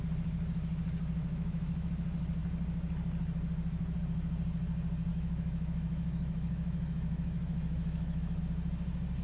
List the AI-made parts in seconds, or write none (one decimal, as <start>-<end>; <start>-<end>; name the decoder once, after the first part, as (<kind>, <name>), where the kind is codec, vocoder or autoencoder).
1.2-1.9 (autoencoder, DAC-VAE); 5.1-8.4